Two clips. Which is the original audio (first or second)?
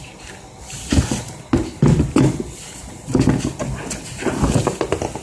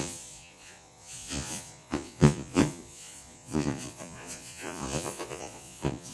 first